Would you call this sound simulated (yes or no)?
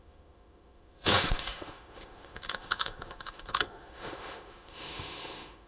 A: yes